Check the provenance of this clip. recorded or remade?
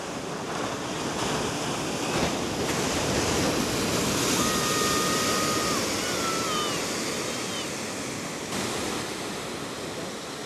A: recorded